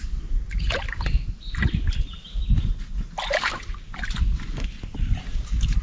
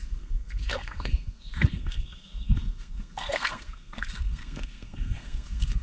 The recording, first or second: first